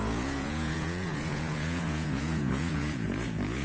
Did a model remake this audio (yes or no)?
yes